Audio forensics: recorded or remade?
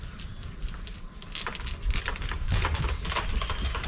recorded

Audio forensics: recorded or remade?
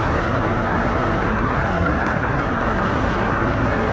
remade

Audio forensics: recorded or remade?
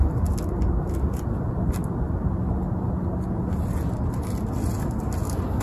recorded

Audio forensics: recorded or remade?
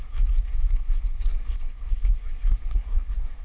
remade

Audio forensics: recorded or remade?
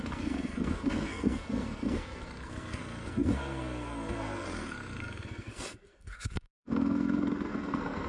remade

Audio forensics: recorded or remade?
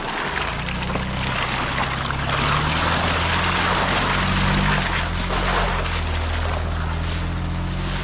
recorded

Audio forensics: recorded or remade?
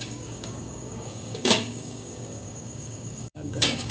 remade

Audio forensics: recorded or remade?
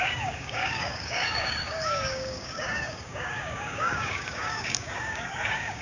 remade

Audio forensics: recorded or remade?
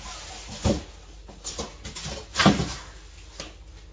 recorded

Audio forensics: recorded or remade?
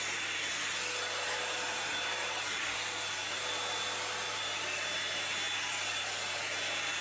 recorded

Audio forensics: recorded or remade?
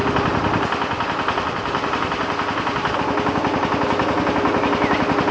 recorded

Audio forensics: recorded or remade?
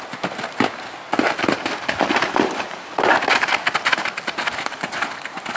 recorded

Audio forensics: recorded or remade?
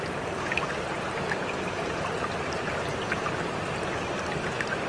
recorded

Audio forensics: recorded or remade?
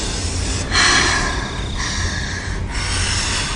recorded